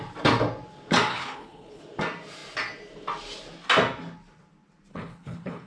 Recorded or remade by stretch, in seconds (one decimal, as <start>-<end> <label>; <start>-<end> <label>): 0.0-1.1 recorded; 1.1-1.8 remade; 1.8-4.9 recorded; 4.9-5.7 remade